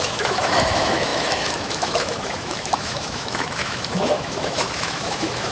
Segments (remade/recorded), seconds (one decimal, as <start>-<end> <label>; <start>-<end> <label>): 0.0-5.5 remade